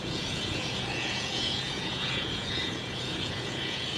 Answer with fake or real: fake